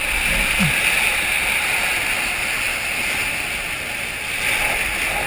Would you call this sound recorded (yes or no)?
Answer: yes